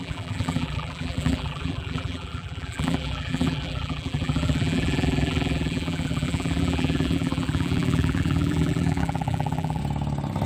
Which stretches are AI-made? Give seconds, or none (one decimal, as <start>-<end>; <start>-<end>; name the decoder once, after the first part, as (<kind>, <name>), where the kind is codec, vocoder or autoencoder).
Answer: 0.0-9.8 (vocoder, BigVGAN v2)

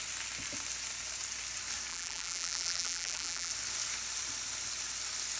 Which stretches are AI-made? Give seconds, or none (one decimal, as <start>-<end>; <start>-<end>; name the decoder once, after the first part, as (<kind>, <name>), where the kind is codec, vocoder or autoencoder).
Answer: 1.9-3.5 (vocoder, BigVGAN v2)

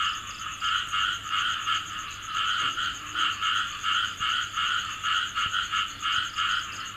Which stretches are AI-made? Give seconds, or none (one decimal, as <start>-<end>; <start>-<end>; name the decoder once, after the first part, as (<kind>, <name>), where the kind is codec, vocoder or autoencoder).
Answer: 1.2-5.4 (vocoder, BigVGAN v2)